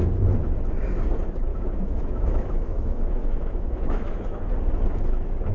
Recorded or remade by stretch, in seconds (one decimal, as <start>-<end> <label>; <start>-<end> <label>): 0.0-1.5 recorded; 1.5-4.5 remade; 4.5-5.5 recorded